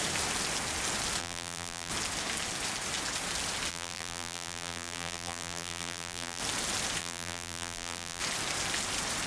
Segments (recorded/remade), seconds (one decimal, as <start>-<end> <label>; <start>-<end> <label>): 0.0-1.2 recorded; 1.2-1.9 remade; 1.9-3.7 recorded; 3.7-6.4 remade; 6.4-7.0 recorded; 7.0-8.2 remade; 8.2-9.3 recorded